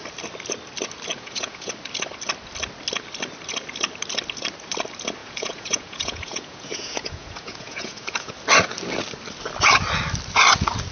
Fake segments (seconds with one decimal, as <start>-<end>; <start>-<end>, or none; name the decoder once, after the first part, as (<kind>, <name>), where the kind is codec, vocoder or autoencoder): 1.1-1.7 (vocoder, Vocos); 5.2-8.3